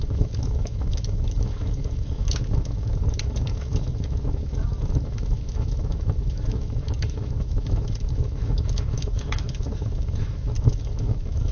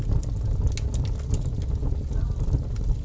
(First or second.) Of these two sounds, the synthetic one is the first